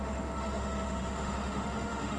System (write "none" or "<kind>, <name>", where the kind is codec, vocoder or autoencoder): autoencoder, DAC-VAE